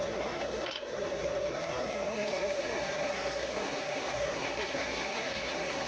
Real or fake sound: fake